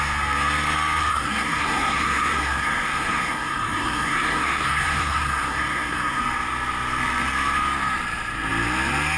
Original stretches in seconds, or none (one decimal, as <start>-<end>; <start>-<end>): 0.0-1.1; 6.2-9.2